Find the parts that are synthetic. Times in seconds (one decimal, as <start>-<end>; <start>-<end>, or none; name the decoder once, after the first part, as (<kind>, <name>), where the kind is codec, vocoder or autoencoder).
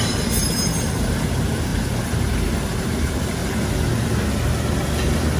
0.0-1.7 (vocoder, BigVGAN v2); 2.2-3.4